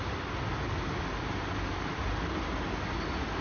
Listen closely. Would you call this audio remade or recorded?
recorded